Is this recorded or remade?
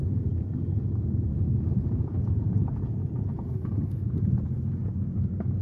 remade